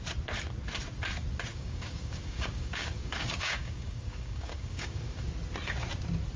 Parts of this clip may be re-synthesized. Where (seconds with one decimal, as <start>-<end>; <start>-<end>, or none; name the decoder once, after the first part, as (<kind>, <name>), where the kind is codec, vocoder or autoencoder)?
1.5-5.3 (codec, DAC)